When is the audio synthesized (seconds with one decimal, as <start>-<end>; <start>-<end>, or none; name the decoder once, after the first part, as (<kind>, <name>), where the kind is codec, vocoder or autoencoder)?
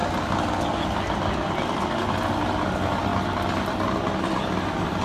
2.6-3.1 (vocoder, BigVGAN v2); 3.7-5.0